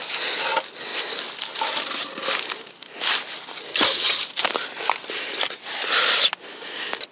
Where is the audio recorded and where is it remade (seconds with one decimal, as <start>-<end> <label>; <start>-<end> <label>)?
0.0-3.7 recorded; 3.7-4.2 remade; 4.2-7.1 recorded